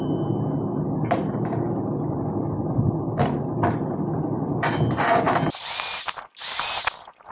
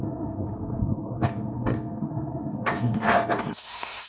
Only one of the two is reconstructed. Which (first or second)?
second